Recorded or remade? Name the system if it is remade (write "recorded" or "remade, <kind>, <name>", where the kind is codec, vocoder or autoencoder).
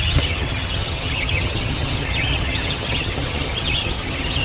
remade, vocoder, HiFi-GAN